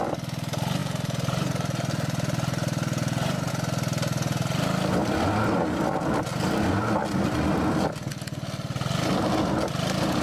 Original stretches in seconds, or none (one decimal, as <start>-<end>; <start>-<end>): 0.0-0.8; 3.5-10.2